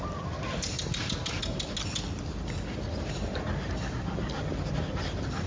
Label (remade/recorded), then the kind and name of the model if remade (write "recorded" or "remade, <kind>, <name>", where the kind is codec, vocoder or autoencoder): recorded